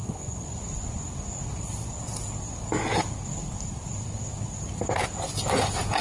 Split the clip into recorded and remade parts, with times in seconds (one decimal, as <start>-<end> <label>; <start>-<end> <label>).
0.0-1.0 remade; 1.0-6.0 recorded

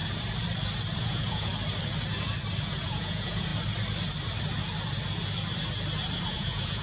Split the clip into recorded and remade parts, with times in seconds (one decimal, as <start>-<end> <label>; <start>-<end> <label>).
0.0-1.0 recorded; 1.0-1.5 remade; 1.5-2.8 recorded; 2.8-3.5 remade; 3.5-6.3 recorded; 6.3-6.8 remade

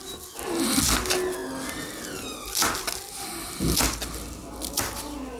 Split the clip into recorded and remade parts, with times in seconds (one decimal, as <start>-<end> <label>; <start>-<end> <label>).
0.0-5.4 recorded